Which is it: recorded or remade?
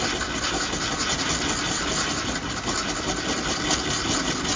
recorded